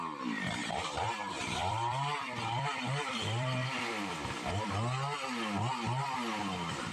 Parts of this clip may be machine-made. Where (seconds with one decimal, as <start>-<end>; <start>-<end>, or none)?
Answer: 0.6-4.7